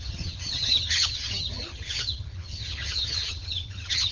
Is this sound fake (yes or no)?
yes